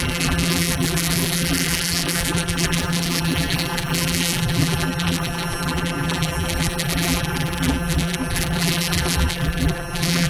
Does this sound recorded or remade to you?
remade